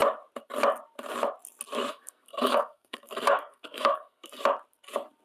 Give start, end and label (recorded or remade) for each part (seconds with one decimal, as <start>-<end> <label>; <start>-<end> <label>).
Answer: 0.0-1.9 recorded; 1.9-4.4 remade; 4.4-5.2 recorded

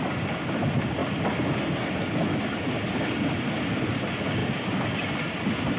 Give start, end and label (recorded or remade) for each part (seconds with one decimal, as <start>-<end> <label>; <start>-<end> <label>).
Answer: 0.0-5.8 recorded

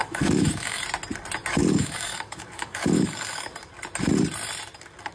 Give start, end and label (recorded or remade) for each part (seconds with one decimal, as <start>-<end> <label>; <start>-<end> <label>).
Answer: 0.0-0.8 remade; 0.8-1.6 recorded; 1.6-3.5 remade; 3.5-5.1 recorded